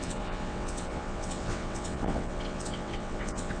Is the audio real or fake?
fake